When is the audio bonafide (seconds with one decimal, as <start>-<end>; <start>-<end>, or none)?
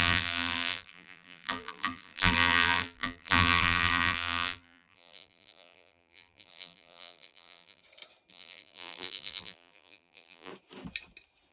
7.8-8.3; 10.5-11.5